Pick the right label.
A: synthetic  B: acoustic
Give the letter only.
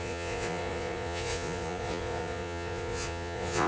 A